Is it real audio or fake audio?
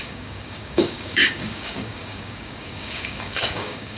fake